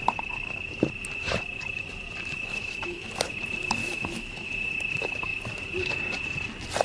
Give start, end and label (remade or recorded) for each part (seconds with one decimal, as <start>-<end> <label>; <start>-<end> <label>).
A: 0.0-2.6 recorded; 2.6-3.1 remade; 3.1-3.8 recorded; 3.8-4.5 remade; 4.5-6.8 recorded

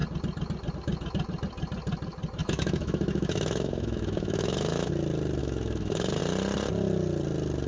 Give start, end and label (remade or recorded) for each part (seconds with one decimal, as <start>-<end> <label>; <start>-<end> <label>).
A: 0.0-2.4 recorded; 2.4-4.9 remade; 4.9-5.4 recorded; 5.4-6.2 remade; 6.2-7.7 recorded